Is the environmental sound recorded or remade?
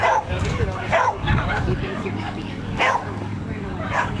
remade